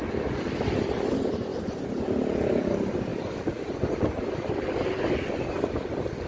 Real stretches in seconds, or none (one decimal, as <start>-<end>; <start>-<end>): 0.0-6.3